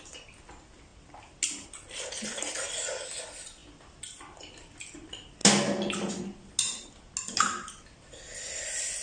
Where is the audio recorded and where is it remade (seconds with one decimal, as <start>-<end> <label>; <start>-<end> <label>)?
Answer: 0.0-9.0 recorded